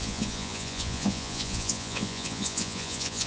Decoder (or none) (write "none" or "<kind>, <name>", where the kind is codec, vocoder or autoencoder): vocoder, Vocos